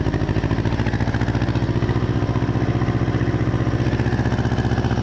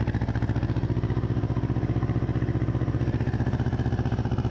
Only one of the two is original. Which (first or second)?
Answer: first